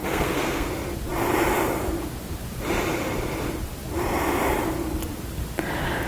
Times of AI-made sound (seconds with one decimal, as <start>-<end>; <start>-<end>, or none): 0.0-0.7